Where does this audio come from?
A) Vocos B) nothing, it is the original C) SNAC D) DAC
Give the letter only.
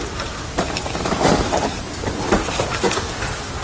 B